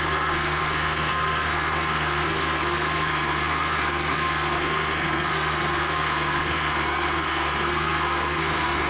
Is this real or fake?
fake